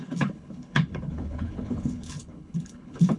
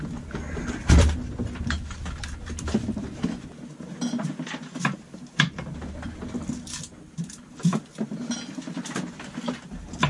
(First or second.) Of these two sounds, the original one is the second